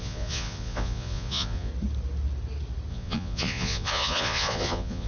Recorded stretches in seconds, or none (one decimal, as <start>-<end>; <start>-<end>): 1.7-2.9